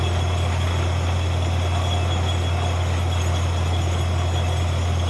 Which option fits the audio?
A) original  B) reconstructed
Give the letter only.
A